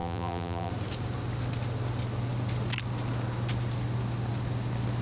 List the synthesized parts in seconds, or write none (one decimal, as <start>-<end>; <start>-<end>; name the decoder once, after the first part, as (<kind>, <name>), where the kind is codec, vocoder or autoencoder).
0.0-0.7 (vocoder, BigVGAN v2)